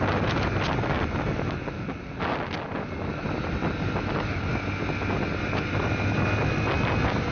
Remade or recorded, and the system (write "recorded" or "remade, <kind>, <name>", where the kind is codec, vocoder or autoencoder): recorded